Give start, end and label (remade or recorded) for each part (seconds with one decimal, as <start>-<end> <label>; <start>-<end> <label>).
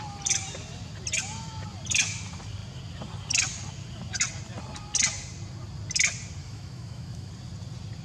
0.0-6.4 recorded; 6.4-7.3 remade; 7.3-8.0 recorded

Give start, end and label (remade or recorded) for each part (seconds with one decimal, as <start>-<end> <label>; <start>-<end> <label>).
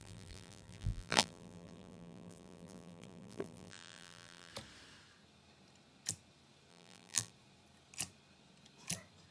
0.0-4.5 remade; 4.5-6.7 recorded; 6.7-7.3 remade; 7.3-9.3 recorded